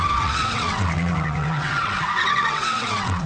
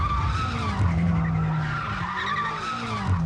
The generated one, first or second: first